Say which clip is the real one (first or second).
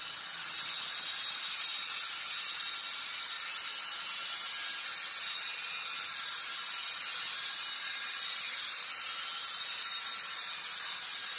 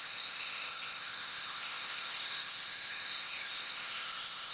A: first